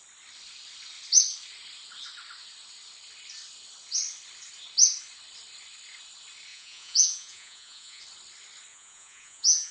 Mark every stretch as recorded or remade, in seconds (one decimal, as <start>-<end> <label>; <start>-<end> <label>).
0.0-6.5 recorded; 6.5-8.0 remade; 8.0-8.7 recorded; 8.7-9.7 remade